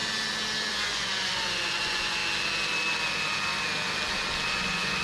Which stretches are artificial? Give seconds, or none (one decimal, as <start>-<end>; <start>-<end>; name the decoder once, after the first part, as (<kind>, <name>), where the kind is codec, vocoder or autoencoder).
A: 0.7-2.2 (vocoder, Vocos); 4.5-5.0